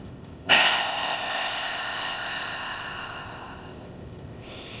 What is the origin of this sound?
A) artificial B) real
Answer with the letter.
A